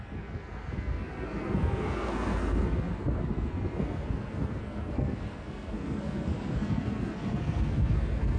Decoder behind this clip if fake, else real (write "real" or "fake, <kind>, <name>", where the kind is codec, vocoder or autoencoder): fake, codec, SNAC